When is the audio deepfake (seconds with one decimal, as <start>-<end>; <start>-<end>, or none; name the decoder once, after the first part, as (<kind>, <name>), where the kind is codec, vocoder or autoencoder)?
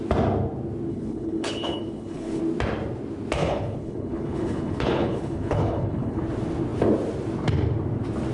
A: 0.9-2.4 (codec, HILCodec); 3.4-6.2